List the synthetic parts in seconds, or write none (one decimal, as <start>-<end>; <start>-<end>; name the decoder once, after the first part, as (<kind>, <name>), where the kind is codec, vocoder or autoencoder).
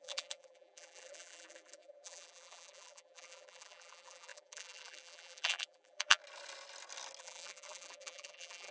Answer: 0.0-6.2 (vocoder, BigVGAN v2); 7.2-8.7